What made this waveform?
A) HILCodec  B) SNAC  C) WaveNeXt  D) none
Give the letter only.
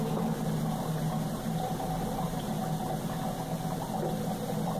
D